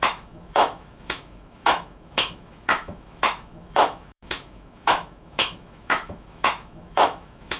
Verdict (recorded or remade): remade